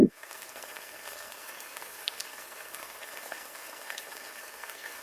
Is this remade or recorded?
remade